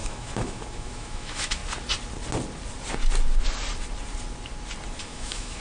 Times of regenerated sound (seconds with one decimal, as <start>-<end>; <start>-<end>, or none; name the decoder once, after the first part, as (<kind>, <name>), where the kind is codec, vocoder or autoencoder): 0.0-1.6 (autoencoder, DAC-VAE); 5.0-5.6